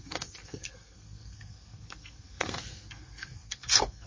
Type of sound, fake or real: fake